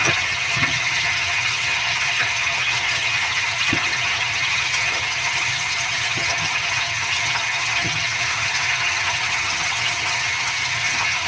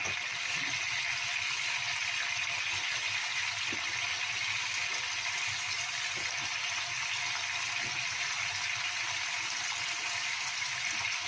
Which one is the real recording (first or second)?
second